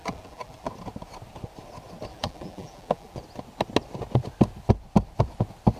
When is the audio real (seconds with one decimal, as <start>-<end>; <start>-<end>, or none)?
0.7-2.1; 3.2-5.8